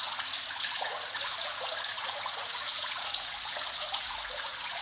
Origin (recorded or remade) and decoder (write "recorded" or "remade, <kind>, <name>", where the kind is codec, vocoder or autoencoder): remade, vocoder, Vocos